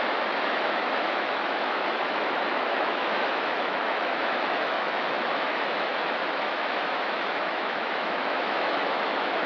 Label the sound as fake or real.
fake